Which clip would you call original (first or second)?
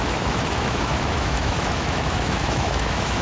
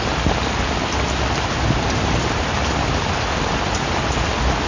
second